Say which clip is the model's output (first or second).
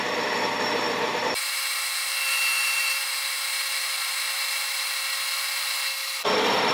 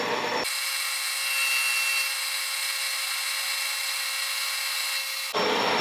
first